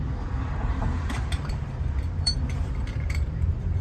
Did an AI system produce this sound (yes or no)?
yes